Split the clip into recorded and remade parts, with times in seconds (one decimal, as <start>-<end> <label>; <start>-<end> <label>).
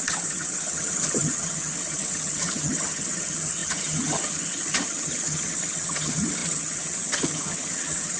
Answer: 0.0-8.2 remade